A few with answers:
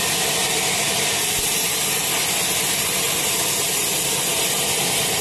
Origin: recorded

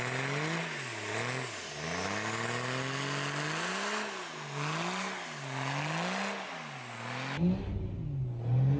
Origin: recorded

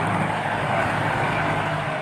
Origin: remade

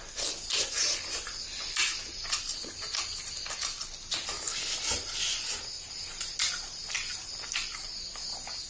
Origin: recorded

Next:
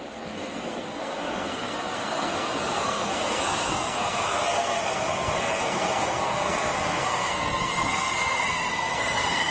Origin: remade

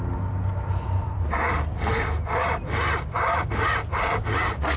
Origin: recorded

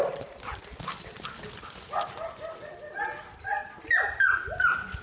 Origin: recorded